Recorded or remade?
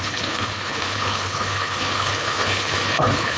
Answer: remade